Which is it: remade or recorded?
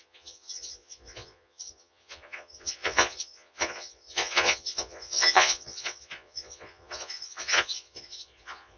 remade